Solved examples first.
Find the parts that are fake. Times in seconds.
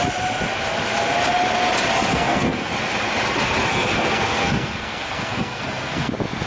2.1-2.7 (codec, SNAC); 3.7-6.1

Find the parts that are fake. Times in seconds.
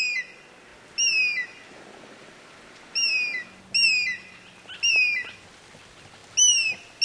none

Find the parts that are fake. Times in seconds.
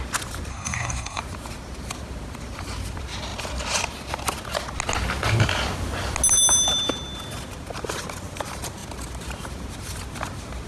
0.5-1.2 (codec, SNAC)